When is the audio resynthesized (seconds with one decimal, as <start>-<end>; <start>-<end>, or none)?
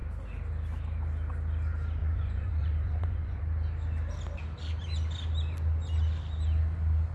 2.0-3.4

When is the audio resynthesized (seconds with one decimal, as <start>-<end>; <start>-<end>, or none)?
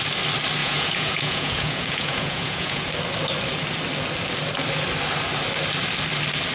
0.6-2.8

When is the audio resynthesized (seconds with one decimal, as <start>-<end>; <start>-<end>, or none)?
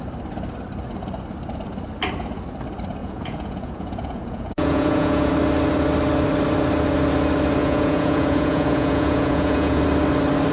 3.0-5.3; 7.6-9.8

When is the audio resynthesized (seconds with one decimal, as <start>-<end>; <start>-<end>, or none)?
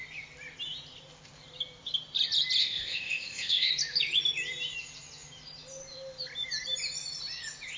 2.6-3.7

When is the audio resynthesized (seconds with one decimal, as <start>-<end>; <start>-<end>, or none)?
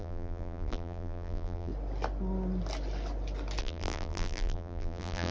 0.0-1.7; 3.6-5.3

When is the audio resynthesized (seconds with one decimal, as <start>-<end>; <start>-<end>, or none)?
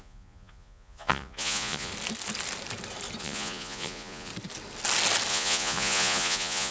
0.0-1.9; 3.2-4.3; 5.3-6.7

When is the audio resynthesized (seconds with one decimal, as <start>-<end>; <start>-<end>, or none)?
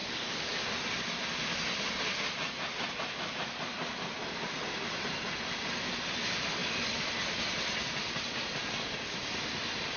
0.0-0.6